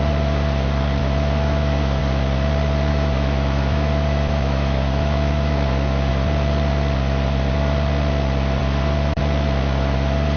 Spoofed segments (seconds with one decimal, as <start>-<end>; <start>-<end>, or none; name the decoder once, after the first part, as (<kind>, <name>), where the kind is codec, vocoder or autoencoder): 1.0-2.0 (autoencoder, DAC-VAE); 2.9-6.1